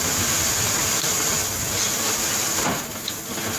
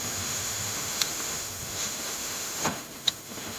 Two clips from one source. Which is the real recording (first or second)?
first